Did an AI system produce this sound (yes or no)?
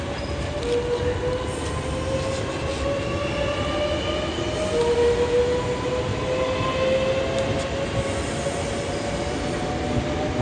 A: no